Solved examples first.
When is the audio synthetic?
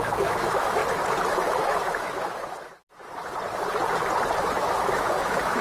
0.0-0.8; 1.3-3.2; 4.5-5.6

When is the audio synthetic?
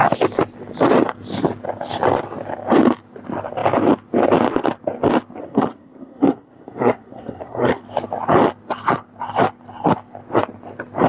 5.4-7.8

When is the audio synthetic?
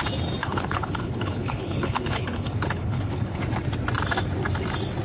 0.4-3.4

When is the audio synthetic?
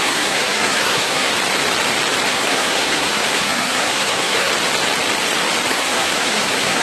0.0-1.3; 2.3-4.5; 5.7-6.8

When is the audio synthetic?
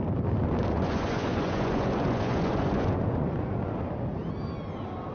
0.6-3.7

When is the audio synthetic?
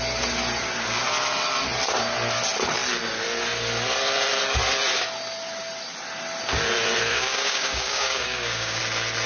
7.1-8.8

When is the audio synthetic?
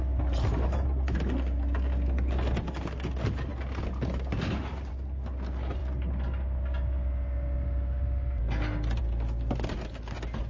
none